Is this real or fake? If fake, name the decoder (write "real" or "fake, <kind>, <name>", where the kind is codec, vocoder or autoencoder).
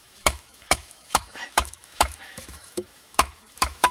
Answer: fake, autoencoder, DAC-VAE